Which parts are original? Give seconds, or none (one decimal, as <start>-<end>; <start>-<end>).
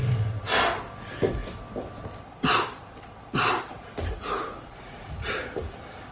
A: 0.0-4.4; 5.3-6.1